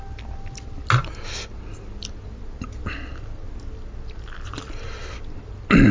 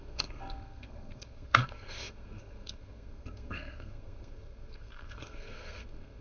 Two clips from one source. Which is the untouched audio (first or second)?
first